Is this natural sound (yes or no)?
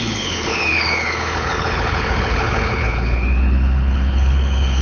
no